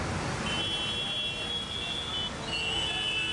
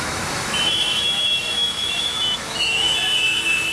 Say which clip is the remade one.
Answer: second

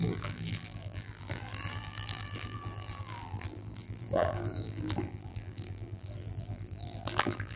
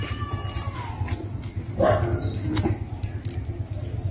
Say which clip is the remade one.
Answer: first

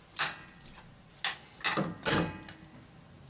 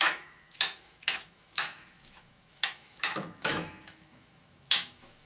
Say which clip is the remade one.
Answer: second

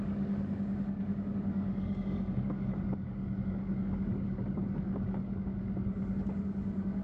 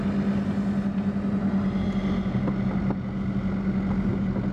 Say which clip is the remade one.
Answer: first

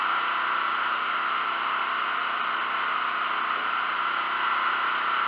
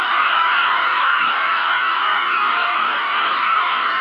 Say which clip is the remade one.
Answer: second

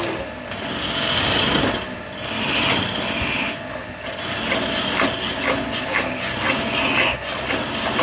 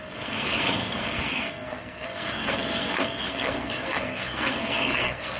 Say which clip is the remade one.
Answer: second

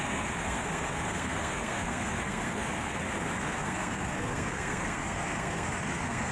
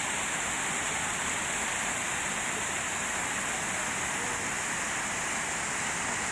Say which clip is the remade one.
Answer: first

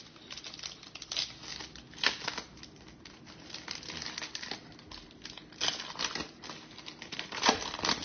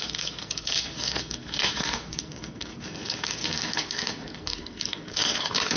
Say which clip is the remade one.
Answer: second